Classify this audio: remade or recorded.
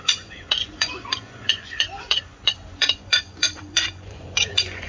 remade